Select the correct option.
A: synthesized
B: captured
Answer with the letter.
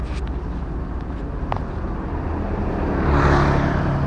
B